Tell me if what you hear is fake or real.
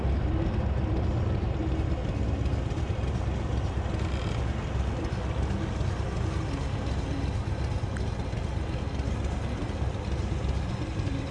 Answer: real